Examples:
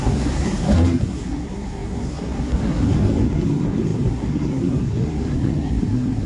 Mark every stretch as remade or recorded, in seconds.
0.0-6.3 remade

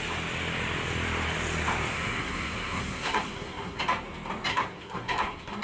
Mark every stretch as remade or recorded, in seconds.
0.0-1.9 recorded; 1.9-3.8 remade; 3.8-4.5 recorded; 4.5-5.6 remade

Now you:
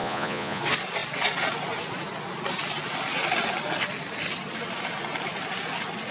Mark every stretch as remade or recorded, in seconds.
0.0-0.6 remade; 0.6-6.1 recorded